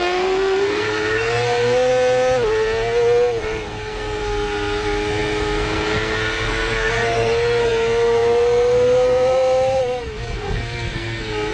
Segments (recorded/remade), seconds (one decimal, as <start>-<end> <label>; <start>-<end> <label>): 0.0-1.9 remade; 1.9-3.4 recorded; 3.4-11.5 remade